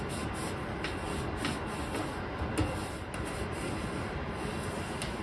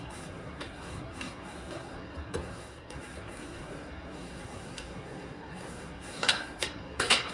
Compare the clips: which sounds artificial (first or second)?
second